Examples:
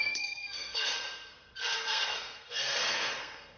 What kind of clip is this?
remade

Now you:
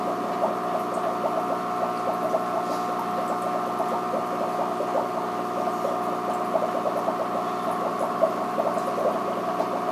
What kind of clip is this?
recorded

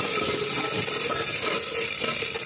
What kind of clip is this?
recorded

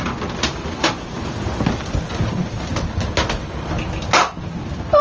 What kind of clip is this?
recorded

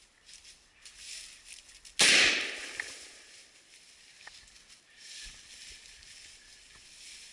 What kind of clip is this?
recorded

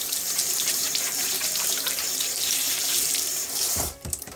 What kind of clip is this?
remade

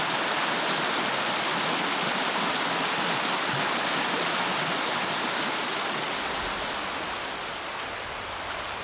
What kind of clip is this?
recorded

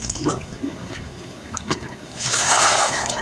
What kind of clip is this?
remade